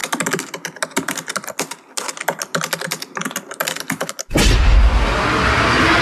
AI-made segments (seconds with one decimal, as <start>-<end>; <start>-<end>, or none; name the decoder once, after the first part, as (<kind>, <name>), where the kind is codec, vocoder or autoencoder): none